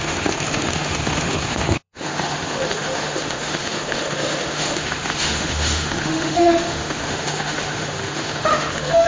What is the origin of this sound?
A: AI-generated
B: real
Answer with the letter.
A